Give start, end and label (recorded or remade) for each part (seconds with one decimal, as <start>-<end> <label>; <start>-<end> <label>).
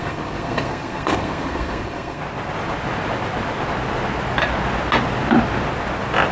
0.0-2.2 remade; 2.2-6.3 recorded